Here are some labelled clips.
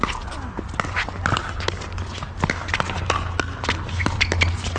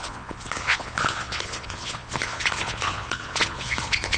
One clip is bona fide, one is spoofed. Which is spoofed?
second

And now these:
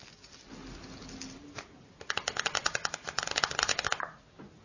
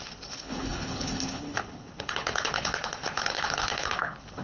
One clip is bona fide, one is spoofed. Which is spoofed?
second